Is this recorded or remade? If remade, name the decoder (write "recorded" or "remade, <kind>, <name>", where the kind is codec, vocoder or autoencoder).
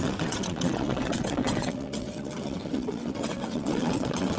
remade, vocoder, WaveNeXt